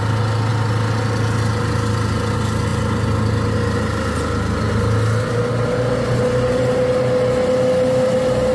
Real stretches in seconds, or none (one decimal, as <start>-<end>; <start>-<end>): 0.0-8.5